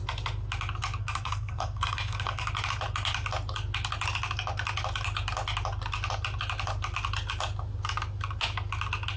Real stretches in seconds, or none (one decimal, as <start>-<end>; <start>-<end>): 0.0-1.0; 2.5-9.2